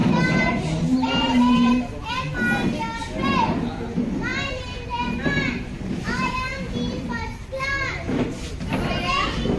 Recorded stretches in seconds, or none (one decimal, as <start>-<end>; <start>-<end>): 2.1-9.6